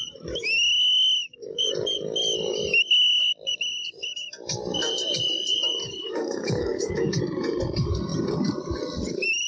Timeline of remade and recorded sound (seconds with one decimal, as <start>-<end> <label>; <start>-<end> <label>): 0.0-5.8 recorded; 5.8-7.2 remade; 7.2-9.5 recorded